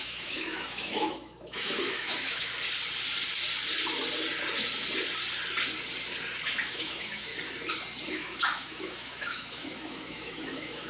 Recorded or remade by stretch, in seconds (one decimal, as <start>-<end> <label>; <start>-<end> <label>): 0.0-2.5 remade; 2.5-6.7 recorded; 6.7-7.3 remade; 7.3-8.1 recorded; 8.1-10.9 remade